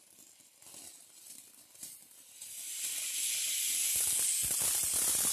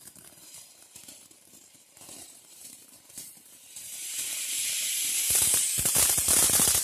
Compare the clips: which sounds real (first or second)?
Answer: first